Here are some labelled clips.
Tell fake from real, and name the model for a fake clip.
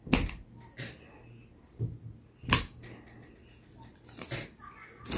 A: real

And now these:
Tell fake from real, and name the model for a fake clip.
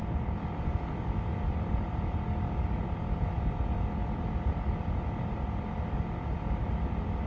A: real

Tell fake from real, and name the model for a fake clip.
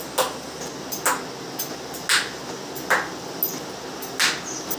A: real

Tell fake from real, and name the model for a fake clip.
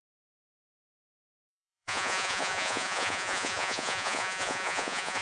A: fake, vocoder, Vocos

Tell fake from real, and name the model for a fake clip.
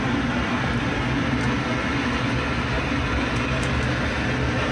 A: real